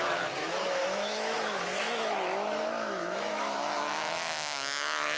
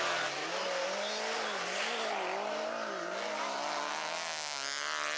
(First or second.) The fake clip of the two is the first